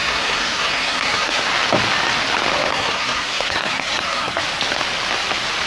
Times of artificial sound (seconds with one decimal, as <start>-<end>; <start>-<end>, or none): 0.0-1.4; 2.7-4.4